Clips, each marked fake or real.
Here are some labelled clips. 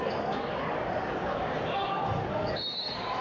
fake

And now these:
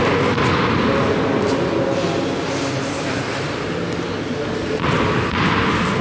real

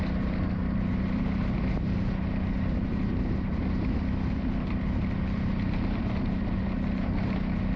real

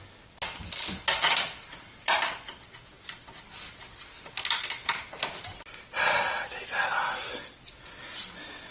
real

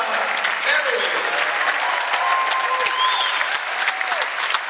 real